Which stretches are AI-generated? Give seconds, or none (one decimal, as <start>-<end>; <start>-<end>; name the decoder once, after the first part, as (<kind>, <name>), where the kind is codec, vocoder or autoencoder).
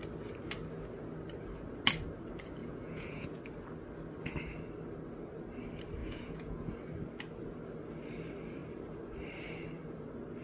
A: 2.6-3.4 (vocoder, Vocos); 6.0-6.7